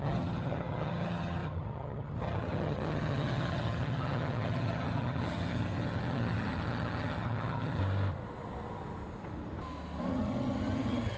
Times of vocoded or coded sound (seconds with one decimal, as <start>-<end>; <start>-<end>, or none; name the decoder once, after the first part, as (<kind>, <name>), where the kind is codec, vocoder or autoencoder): 0.0-7.8 (vocoder, HiFi-GAN); 10.1-11.2